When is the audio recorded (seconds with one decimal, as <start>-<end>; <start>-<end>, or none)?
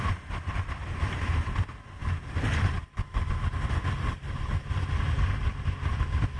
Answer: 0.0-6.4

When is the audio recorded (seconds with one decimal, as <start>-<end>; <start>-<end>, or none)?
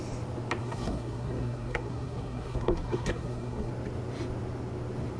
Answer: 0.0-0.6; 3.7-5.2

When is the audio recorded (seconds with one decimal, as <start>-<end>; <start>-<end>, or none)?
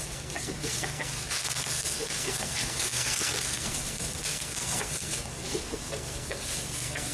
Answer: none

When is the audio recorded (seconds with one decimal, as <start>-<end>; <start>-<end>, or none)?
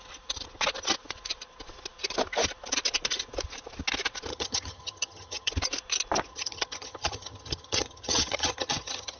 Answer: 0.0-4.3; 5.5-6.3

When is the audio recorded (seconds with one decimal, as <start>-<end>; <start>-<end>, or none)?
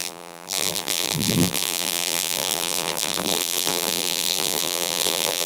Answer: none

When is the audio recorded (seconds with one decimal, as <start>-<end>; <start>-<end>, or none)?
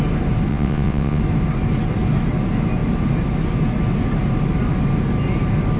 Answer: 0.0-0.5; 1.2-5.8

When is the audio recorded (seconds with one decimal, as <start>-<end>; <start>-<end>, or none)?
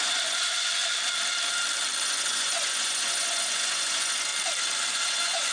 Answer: 0.8-2.0; 4.3-4.9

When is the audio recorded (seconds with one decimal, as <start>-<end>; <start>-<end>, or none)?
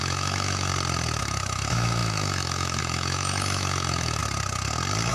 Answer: 0.7-1.2; 4.2-5.1